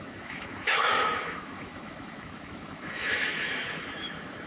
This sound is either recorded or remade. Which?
remade